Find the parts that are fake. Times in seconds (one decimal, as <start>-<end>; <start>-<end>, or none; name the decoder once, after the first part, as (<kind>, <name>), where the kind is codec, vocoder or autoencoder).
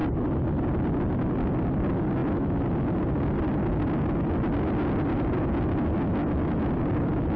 none